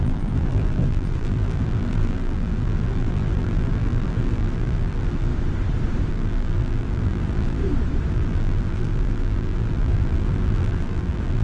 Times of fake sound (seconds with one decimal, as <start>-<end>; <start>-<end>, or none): 0.0-5.3; 6.1-7.6; 8.1-11.4